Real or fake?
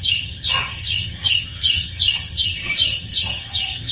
fake